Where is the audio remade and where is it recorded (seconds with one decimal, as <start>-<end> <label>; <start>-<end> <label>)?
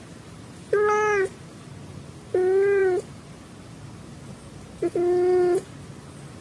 0.0-1.3 recorded; 1.3-1.8 remade; 1.8-6.4 recorded